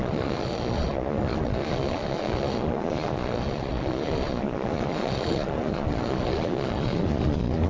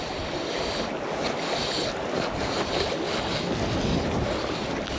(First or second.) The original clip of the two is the second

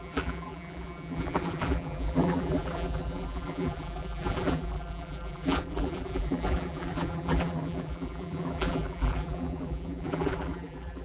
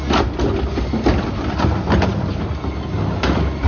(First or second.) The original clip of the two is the second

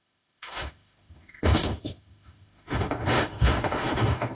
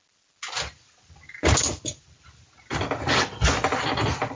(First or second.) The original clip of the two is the second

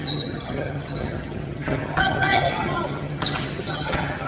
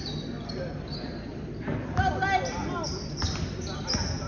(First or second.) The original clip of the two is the second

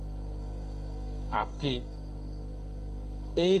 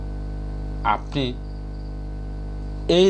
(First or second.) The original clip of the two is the second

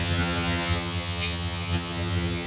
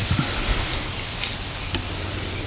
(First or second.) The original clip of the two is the second